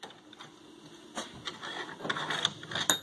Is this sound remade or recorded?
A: recorded